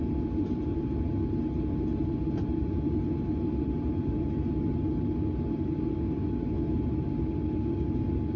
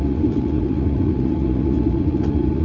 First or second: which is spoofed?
second